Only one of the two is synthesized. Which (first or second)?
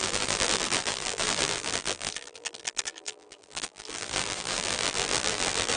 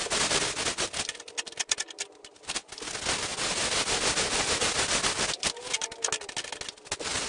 first